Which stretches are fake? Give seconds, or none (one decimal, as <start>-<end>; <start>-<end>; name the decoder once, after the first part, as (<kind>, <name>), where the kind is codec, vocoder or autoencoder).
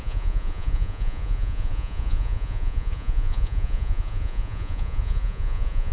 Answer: 0.0-5.9 (vocoder, Vocos)